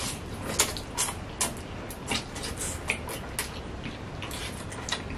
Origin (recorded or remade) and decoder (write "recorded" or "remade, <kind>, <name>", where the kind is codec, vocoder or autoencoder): recorded